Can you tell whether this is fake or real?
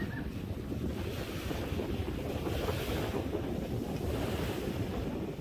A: real